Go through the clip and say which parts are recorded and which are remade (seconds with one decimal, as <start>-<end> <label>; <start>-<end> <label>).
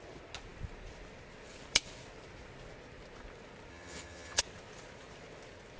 0.0-3.7 recorded; 3.7-4.4 remade; 4.4-5.8 recorded